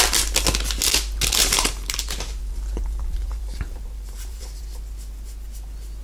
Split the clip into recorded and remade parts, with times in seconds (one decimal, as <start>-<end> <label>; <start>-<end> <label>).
0.0-1.4 recorded; 1.4-4.6 remade; 4.6-6.0 recorded